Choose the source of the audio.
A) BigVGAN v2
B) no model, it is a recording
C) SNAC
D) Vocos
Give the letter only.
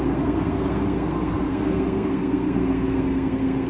C